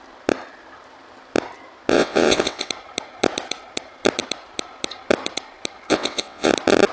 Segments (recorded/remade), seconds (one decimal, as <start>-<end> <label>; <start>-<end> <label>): 0.0-1.9 recorded; 1.9-2.7 remade; 2.7-5.9 recorded; 5.9-6.5 remade; 6.5-6.9 recorded